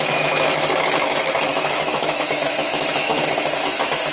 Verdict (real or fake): fake